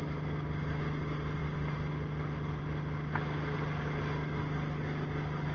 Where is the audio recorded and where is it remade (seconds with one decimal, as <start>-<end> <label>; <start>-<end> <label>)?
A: 0.0-5.5 recorded